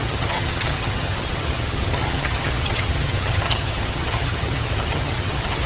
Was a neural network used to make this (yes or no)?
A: yes